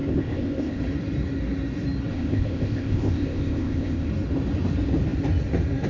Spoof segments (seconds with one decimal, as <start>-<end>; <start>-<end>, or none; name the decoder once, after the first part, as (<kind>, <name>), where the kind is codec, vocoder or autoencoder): 0.0-0.8 (codec, ZipCodec); 2.1-4.1